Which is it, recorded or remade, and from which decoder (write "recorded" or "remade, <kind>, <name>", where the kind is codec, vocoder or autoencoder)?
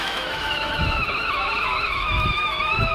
remade, autoencoder, DAC-VAE